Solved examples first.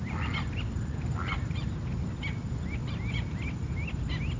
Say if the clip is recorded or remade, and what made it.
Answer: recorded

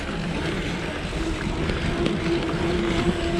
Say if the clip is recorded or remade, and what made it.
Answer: recorded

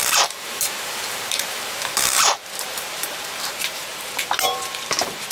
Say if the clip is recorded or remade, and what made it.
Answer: remade, vocoder, BigVGAN v2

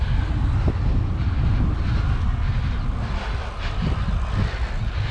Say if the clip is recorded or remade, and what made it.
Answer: recorded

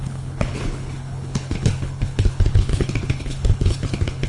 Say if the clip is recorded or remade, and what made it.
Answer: remade, codec, HILCodec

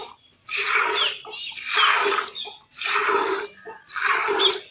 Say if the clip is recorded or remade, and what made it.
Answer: recorded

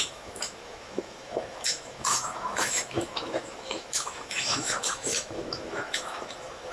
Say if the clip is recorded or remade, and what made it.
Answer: remade, autoencoder, DAC-VAE